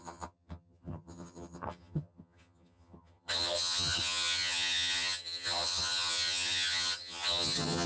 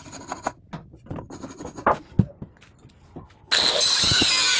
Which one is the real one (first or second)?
second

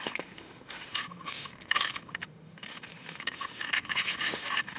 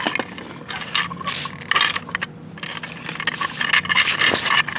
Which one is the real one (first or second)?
second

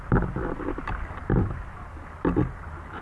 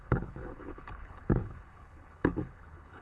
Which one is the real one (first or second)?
first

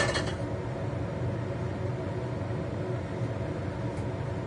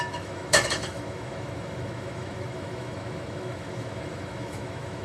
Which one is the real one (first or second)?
first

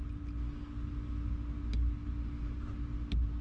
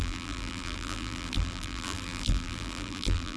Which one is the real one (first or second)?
first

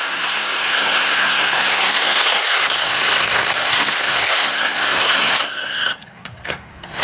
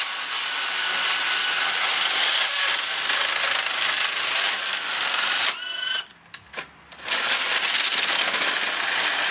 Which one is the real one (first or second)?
second